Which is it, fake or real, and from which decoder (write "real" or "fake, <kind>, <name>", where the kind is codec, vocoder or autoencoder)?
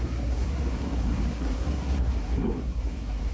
fake, codec, SNAC